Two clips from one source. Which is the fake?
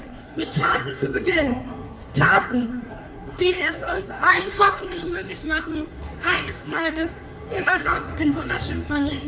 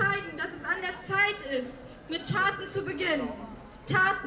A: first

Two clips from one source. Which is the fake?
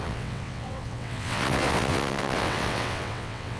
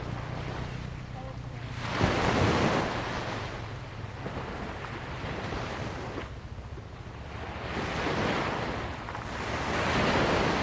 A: first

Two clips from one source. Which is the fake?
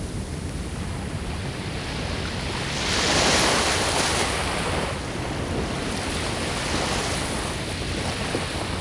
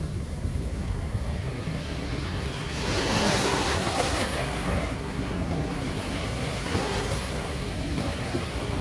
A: second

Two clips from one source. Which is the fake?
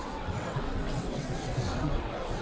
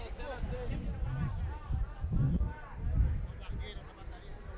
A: first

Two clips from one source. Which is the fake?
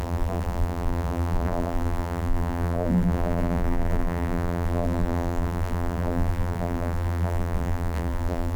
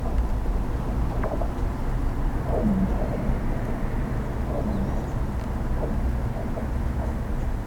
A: first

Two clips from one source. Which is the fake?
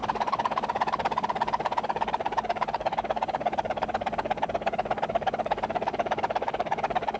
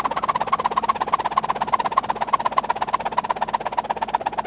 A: first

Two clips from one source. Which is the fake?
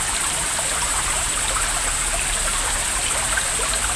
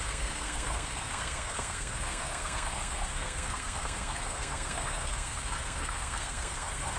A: second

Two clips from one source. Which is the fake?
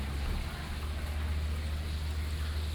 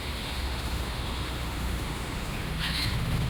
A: second